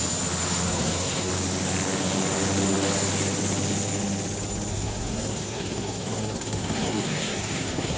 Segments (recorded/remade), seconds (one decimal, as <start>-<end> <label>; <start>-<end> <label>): 0.0-0.7 recorded; 0.7-1.3 remade; 1.3-4.7 recorded; 4.7-8.0 remade